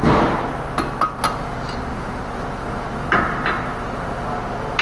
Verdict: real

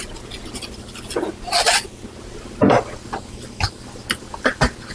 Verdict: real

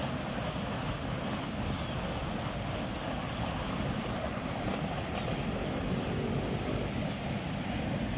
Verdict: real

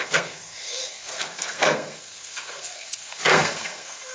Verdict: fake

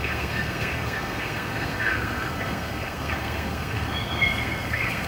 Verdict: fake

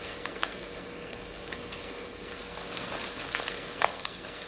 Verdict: fake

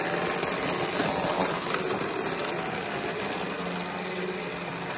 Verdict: real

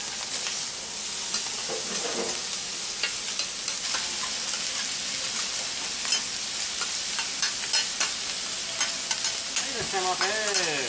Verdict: real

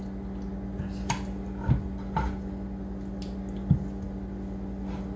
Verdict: real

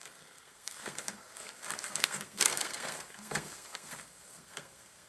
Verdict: fake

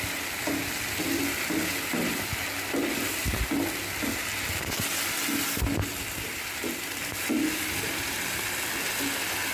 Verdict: real